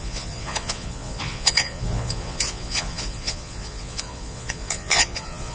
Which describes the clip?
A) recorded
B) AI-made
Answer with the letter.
B